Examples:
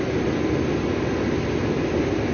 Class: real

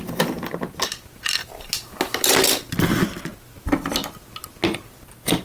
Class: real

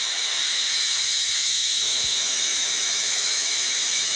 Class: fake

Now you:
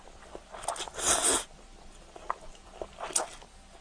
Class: real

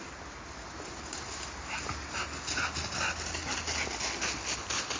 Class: real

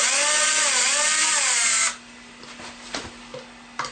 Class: real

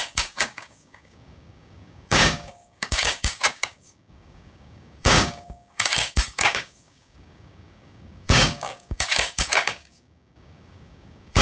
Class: fake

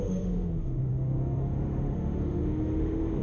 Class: fake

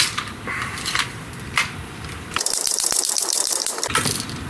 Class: fake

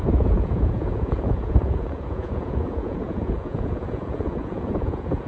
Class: fake